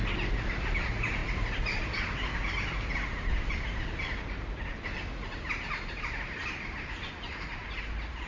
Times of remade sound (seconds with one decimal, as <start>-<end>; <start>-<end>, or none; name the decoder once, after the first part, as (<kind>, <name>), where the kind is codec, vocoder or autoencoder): none